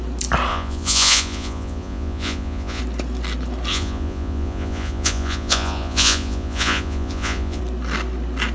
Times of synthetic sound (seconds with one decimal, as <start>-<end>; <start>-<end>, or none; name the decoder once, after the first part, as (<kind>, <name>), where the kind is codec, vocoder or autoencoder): 0.5-2.8 (vocoder, Vocos); 3.7-7.6